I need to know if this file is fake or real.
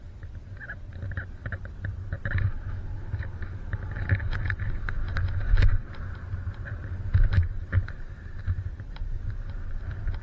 real